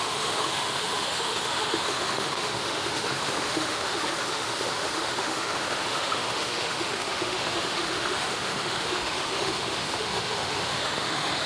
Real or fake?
fake